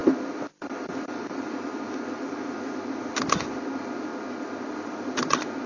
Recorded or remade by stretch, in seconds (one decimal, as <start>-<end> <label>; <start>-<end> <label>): 0.0-5.7 recorded